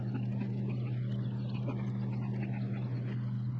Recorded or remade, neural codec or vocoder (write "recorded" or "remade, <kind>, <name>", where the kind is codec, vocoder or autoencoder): recorded